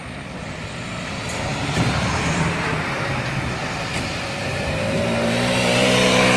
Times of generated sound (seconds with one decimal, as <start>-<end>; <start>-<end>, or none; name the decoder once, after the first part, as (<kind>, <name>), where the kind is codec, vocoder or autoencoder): 0.6-3.6 (vocoder, BigVGAN v2); 4.4-6.4